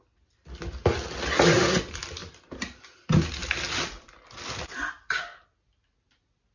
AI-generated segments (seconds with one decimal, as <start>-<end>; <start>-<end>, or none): 2.2-2.8